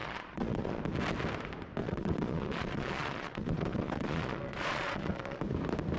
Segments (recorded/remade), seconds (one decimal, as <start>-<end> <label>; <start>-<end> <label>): 0.0-0.8 remade; 0.8-1.8 recorded; 1.8-5.4 remade; 5.4-6.0 recorded

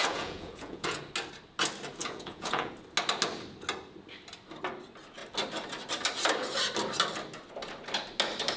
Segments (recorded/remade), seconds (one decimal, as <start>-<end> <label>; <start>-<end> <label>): 0.0-1.0 remade; 1.0-2.0 recorded; 2.0-2.7 remade; 2.7-8.6 recorded

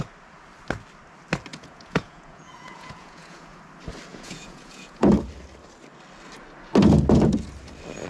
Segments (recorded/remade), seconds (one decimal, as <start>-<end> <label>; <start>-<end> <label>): 0.0-1.5 recorded; 1.5-3.6 remade; 3.6-4.1 recorded; 4.1-5.1 remade; 5.1-8.1 recorded

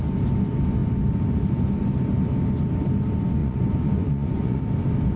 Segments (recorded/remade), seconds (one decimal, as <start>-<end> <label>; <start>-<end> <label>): 0.0-3.4 recorded; 3.4-4.6 remade; 4.6-5.2 recorded

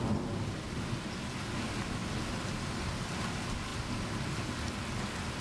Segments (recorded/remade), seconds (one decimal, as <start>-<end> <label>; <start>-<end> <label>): 0.0-5.4 recorded

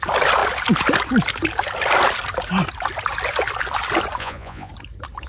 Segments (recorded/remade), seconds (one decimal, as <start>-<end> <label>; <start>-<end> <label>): 0.0-4.2 recorded; 4.2-4.7 remade; 4.7-5.3 recorded

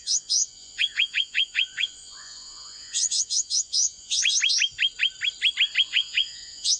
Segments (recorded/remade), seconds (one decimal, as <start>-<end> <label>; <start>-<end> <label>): 0.0-4.2 remade; 4.2-5.8 recorded; 5.8-6.8 remade